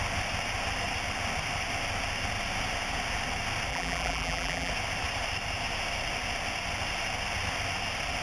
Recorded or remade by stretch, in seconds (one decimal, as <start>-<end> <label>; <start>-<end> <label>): 0.0-3.7 recorded; 3.7-4.7 remade; 4.7-8.2 recorded